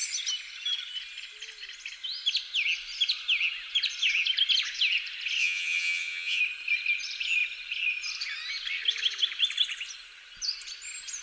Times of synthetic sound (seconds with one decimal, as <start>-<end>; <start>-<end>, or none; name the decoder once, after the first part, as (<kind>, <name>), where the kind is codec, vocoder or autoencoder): 5.4-6.4 (vocoder, HiFi-GAN)